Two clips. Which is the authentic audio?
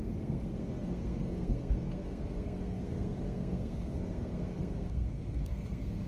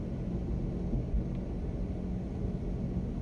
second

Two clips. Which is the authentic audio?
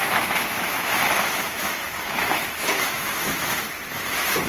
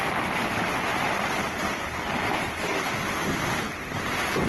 second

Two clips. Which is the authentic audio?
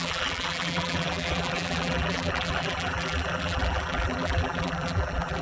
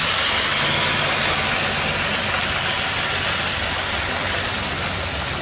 second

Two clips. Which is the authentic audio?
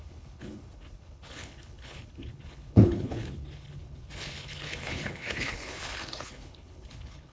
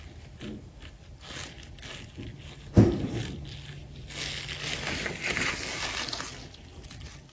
second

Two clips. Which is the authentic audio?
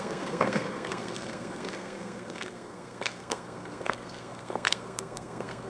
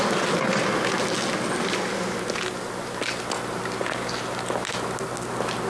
second